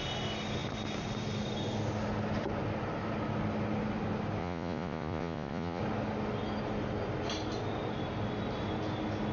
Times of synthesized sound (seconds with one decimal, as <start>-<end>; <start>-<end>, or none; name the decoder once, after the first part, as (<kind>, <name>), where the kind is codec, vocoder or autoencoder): 4.4-5.8 (vocoder, Vocos)